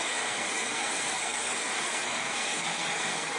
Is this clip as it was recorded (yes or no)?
no